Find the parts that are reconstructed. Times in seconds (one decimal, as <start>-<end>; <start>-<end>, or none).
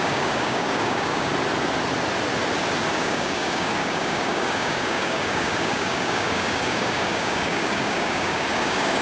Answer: 0.0-1.3; 2.9-9.0